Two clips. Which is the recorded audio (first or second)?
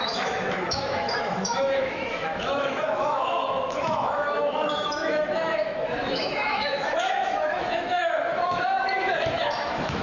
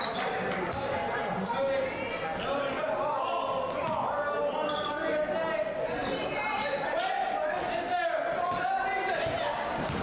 second